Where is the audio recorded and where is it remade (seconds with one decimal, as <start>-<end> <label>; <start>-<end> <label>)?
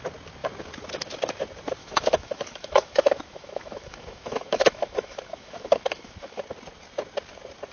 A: 0.0-1.8 recorded; 1.8-6.4 remade; 6.4-7.7 recorded